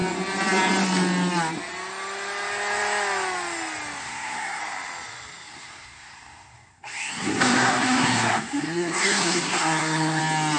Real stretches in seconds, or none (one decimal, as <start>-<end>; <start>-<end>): 0.0-4.0; 4.6-5.5; 10.2-10.6

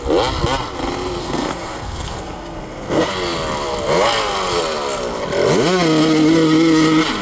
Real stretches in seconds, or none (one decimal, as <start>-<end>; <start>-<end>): 0.0-1.2; 3.1-7.2

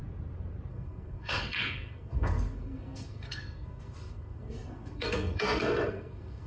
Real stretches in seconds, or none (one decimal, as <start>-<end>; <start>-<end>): 0.0-0.7

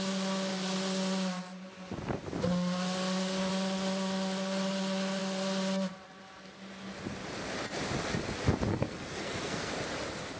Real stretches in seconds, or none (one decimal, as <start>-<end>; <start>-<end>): 0.0-8.7; 9.7-10.4

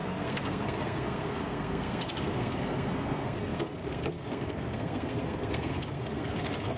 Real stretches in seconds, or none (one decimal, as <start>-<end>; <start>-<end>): none